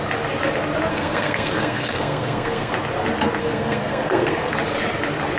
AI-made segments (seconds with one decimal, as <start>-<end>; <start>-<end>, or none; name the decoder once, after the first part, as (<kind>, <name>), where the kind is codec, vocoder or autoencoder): 0.9-2.7 (codec, SNAC); 3.4-4.5